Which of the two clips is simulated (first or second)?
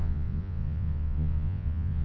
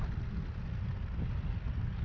first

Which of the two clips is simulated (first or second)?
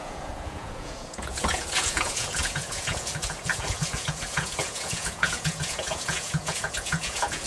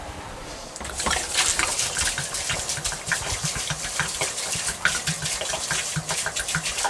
first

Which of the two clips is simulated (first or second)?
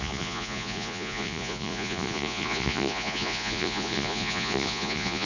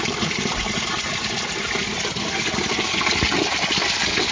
first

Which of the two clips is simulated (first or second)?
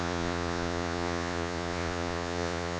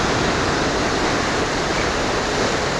first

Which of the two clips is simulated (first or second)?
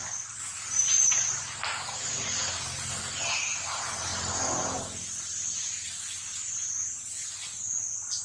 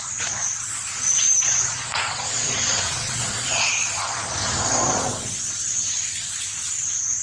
second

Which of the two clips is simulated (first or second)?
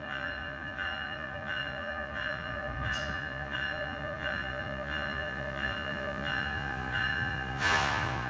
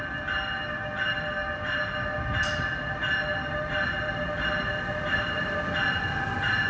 first